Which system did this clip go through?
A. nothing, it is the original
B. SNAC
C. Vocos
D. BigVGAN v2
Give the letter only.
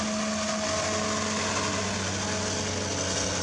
A